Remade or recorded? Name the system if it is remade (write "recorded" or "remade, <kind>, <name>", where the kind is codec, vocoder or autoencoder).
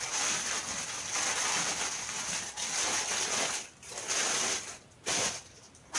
recorded